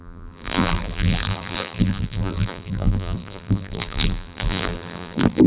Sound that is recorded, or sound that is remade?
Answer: remade